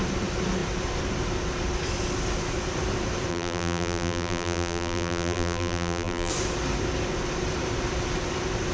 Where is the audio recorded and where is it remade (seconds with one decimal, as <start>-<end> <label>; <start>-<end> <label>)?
0.0-3.3 recorded; 3.3-6.3 remade; 6.3-8.7 recorded